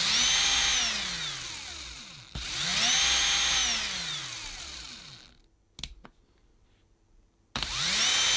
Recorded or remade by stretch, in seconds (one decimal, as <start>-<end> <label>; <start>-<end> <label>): 0.0-8.4 recorded